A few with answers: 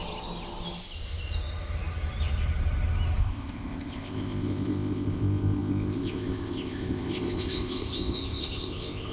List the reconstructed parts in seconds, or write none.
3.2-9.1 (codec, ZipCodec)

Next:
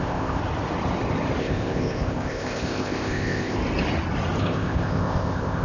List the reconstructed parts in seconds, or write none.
0.0-0.4 (codec, ZipCodec); 1.4-3.6; 4.4-5.6